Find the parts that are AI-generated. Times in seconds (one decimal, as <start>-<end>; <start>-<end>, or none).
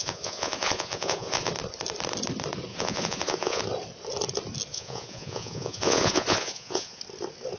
0.0-1.5; 2.7-3.6; 4.7-7.0